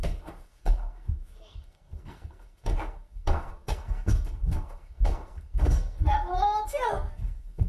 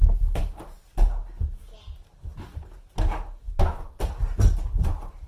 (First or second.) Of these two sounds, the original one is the second